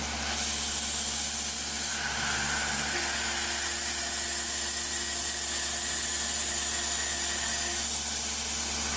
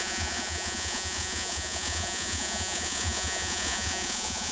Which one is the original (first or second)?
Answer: first